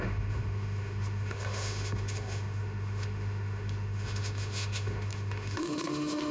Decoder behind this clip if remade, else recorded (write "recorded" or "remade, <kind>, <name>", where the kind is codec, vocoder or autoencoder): remade, autoencoder, DAC-VAE